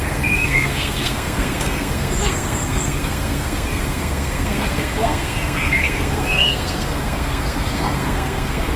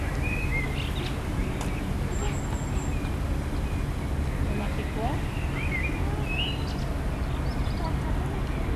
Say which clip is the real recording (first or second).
second